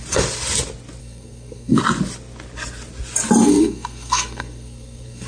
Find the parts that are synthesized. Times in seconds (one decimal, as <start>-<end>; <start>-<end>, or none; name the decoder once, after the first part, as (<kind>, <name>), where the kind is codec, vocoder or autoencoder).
1.0-1.8 (codec, SNAC); 3.5-5.3